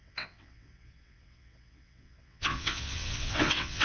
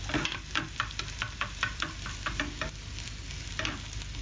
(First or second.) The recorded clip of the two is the second